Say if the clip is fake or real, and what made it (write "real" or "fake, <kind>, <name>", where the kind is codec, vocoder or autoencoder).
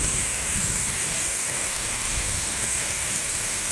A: fake, codec, DAC